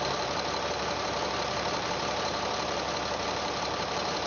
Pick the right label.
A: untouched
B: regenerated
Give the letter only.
B